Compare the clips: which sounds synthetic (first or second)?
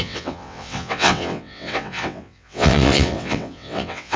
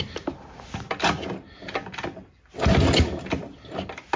first